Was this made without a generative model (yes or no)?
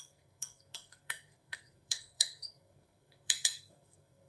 no